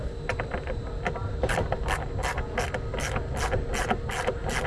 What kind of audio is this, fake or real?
real